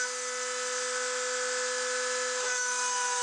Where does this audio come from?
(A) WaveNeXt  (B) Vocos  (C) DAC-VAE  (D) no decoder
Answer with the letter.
D